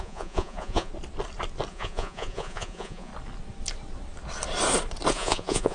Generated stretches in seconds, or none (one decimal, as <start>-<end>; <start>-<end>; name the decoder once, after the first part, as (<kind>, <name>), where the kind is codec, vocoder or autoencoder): 0.0-0.9 (vocoder, Vocos); 1.7-3.1; 5.1-5.7